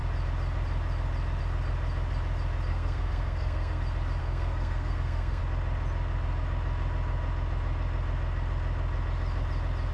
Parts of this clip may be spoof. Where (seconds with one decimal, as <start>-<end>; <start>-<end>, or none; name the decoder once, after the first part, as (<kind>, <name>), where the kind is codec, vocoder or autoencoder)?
2.7-3.8 (codec, SNAC); 4.2-5.4